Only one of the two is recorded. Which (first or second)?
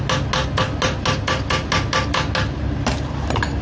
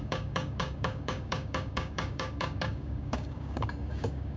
first